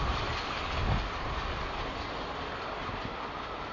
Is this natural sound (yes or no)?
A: yes